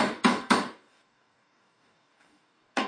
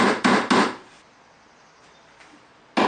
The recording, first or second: second